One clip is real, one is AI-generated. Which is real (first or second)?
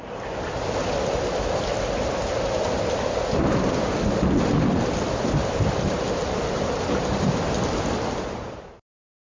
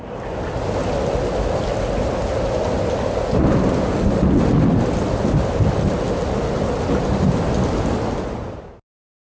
second